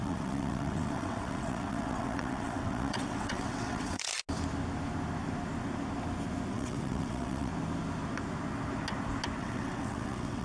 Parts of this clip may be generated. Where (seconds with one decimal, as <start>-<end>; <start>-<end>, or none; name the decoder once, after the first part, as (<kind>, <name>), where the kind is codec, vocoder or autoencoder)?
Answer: 0.0-4.1 (vocoder, WaveNeXt); 6.5-7.5; 9.4-10.4